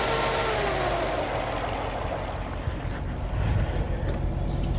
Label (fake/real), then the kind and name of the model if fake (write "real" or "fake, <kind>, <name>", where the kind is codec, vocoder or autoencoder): real